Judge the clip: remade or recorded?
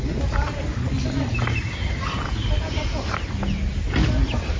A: recorded